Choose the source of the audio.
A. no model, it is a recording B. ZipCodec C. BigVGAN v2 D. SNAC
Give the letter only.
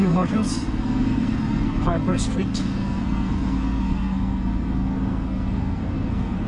D